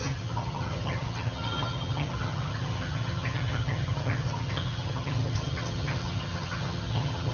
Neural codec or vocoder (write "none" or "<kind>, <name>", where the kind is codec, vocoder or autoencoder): vocoder, HiFi-GAN